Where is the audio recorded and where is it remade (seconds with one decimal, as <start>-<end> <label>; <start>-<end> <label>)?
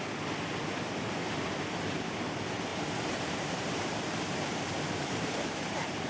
0.0-2.7 recorded; 2.7-6.1 remade